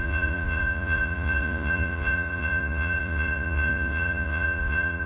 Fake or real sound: fake